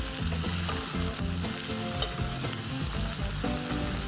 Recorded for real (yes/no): yes